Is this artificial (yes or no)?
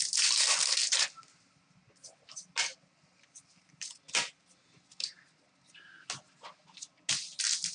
no